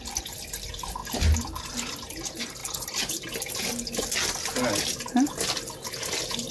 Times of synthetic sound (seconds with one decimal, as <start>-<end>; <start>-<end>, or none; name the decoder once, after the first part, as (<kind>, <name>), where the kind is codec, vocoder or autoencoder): none